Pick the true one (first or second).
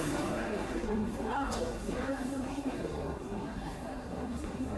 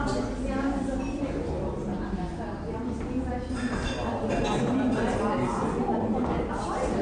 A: second